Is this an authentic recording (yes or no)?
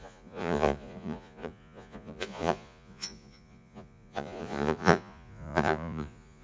no